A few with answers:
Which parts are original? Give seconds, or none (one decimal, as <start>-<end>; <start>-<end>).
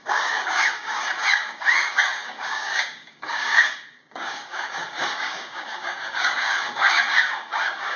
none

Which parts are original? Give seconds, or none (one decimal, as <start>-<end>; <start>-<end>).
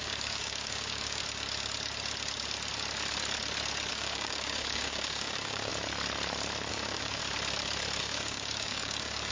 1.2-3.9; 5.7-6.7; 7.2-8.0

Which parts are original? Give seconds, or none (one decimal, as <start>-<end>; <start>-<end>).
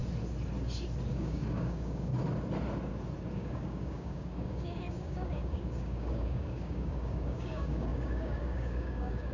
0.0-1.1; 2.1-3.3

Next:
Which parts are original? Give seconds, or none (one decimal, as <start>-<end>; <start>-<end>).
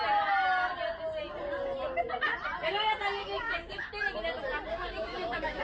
0.0-3.2; 3.9-4.7